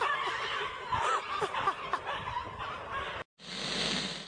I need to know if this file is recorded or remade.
recorded